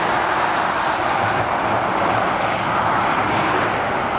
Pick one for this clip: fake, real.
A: real